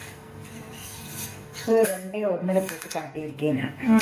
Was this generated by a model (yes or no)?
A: yes